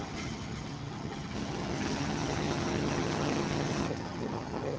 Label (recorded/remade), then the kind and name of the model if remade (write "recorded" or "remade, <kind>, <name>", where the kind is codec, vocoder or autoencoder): remade, vocoder, HiFi-GAN